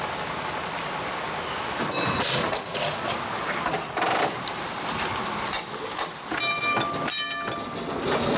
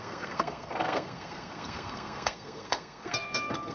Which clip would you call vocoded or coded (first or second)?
second